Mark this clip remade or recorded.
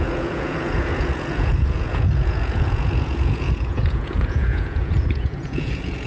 remade